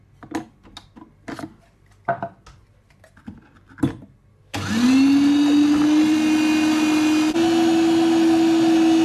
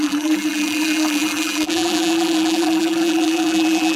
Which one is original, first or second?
first